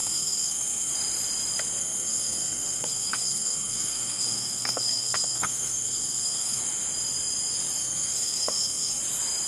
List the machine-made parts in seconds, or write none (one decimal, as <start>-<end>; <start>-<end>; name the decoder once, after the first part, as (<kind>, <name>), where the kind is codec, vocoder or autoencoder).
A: 0.0-0.9 (codec, SNAC); 1.8-6.6; 7.8-9.0